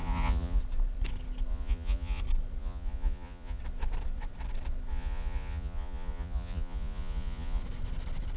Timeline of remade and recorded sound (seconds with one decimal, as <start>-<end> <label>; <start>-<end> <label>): 0.0-0.6 remade; 0.6-1.5 recorded; 1.5-2.2 remade; 2.2-2.6 recorded; 2.6-3.6 remade; 3.6-4.9 recorded; 4.9-7.6 remade; 7.6-8.4 recorded